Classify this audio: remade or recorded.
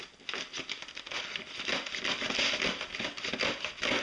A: recorded